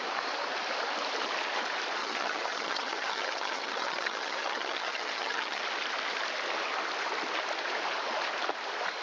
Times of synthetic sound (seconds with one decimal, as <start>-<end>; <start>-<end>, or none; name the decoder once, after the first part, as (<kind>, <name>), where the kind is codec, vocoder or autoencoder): 2.0-5.6 (vocoder, HiFi-GAN)